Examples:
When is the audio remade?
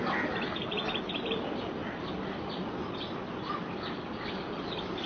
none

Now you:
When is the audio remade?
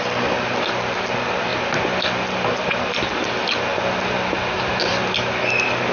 none